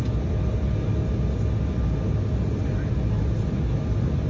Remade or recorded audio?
recorded